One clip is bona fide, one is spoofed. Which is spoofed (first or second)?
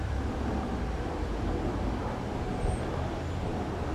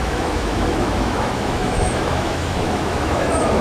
second